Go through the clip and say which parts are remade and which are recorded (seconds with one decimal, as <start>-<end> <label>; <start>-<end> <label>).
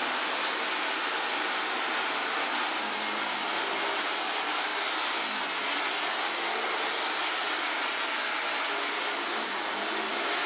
0.0-10.5 recorded